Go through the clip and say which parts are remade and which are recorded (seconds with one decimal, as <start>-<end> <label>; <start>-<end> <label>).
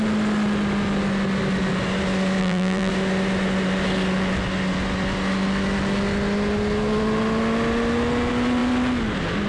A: 0.0-2.4 recorded; 2.4-2.9 remade; 2.9-9.5 recorded